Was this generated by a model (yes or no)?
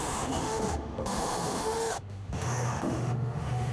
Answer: yes